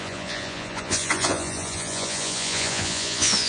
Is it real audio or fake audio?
fake